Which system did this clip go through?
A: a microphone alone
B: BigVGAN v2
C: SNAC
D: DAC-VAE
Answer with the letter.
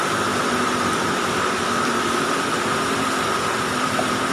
B